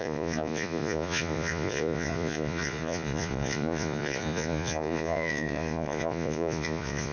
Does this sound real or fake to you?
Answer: fake